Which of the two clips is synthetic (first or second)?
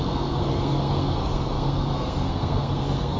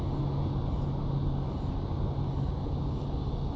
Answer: first